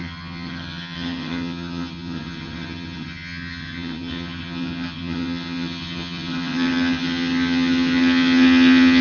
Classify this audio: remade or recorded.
remade